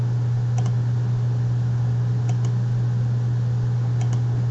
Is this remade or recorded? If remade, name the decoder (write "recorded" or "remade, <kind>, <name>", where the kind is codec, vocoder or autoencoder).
recorded